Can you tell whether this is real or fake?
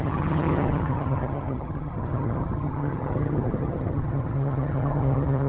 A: fake